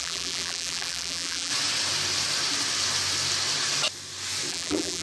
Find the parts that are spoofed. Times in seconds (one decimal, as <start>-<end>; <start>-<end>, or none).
0.0-1.5; 4.5-5.0